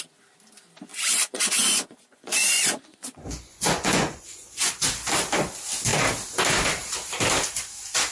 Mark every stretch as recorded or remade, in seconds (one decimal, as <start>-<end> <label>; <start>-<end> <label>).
0.0-0.9 recorded; 0.9-4.7 remade; 4.7-8.1 recorded